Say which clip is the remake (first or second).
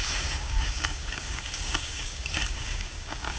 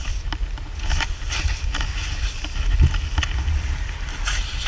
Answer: first